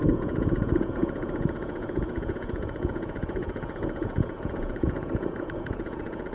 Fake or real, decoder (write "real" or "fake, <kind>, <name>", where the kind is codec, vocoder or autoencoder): fake, vocoder, Vocos